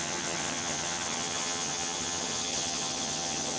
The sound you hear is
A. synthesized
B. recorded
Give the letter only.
A